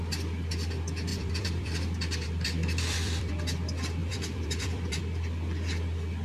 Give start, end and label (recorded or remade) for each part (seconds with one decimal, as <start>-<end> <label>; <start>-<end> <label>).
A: 0.0-1.1 recorded; 1.1-3.3 remade; 3.3-4.0 recorded; 4.0-5.0 remade; 5.0-6.2 recorded